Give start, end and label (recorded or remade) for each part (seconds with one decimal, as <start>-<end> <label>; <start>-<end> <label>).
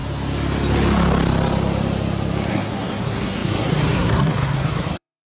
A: 0.0-2.5 recorded; 2.5-5.3 remade